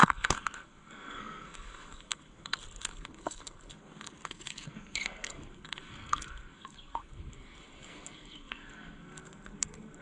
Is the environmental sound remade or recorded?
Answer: remade